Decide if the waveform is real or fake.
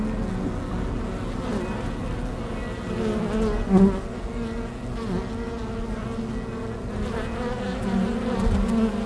real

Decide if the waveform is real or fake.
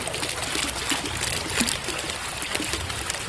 real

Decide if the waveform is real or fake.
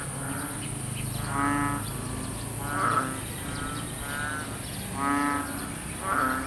real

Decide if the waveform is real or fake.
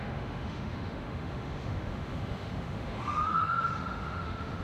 fake